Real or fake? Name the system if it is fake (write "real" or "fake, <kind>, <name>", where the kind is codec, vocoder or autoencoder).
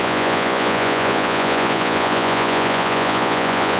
fake, vocoder, Vocos